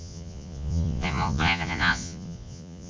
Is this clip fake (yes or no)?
yes